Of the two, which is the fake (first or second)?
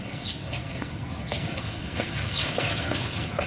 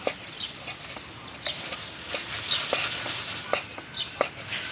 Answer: first